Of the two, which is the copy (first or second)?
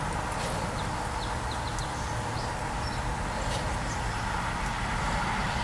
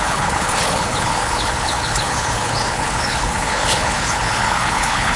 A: second